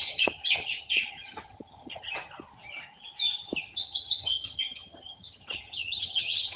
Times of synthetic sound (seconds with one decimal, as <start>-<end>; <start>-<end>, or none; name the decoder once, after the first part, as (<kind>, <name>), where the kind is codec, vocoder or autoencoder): 0.0-2.2 (vocoder, HiFi-GAN); 3.6-6.6

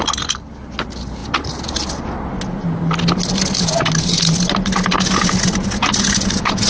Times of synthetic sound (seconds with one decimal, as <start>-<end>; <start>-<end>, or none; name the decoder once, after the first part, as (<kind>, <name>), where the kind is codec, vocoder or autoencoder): none

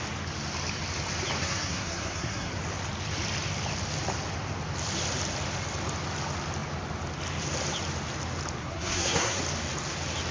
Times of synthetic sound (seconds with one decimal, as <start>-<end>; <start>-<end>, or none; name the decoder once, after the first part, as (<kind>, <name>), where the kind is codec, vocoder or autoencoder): 1.4-2.5 (codec, SNAC); 8.6-9.4

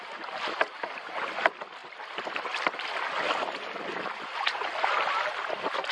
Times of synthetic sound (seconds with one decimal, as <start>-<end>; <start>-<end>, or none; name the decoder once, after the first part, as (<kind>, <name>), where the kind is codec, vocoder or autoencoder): 1.8-5.3 (vocoder, BigVGAN v2)

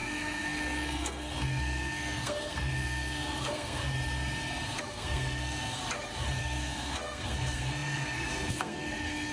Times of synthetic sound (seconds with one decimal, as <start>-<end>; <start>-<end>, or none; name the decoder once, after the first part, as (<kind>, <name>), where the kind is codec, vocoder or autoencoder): 0.0-3.8 (codec, SNAC); 4.8-5.8; 6.4-9.3

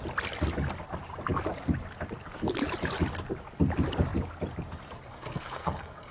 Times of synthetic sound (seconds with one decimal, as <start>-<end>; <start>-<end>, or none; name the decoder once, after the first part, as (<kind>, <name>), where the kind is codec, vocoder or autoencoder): 5.1-6.1 (codec, SNAC)

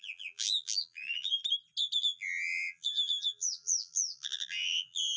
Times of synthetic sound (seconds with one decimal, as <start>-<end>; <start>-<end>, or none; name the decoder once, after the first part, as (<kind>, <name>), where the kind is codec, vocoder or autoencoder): 0.0-1.4 (vocoder, BigVGAN v2); 2.0-5.2

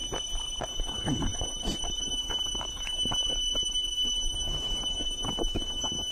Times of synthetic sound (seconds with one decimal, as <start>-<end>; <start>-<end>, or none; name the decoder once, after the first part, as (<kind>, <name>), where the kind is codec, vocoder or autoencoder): 0.7-6.1 (autoencoder, DAC-VAE)